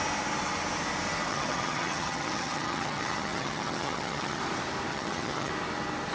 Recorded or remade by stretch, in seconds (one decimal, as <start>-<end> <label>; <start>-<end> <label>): 0.0-1.3 recorded; 1.3-4.4 remade; 4.4-4.9 recorded; 4.9-5.5 remade; 5.5-6.1 recorded